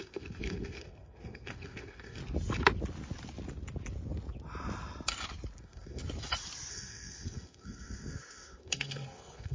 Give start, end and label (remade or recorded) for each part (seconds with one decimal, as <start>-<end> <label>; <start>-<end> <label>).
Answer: 0.0-2.2 remade; 2.2-5.6 recorded; 5.6-6.0 remade; 6.0-6.7 recorded; 6.7-9.5 remade